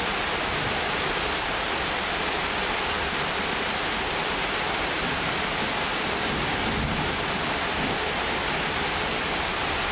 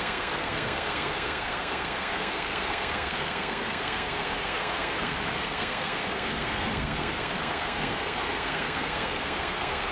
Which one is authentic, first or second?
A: first